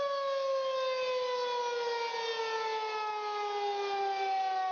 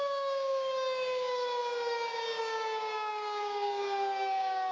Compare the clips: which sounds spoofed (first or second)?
second